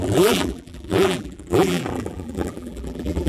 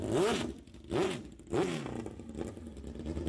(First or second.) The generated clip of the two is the first